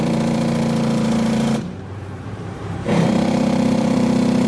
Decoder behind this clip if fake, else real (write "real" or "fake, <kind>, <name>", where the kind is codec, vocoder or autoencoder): fake, vocoder, BigVGAN v2